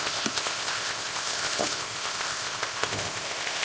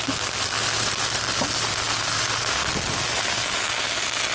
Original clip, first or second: second